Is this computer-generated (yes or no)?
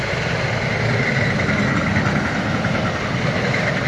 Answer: no